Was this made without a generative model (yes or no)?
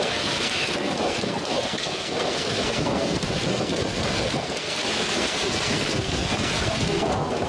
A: no